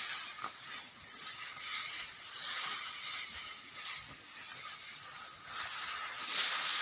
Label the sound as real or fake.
real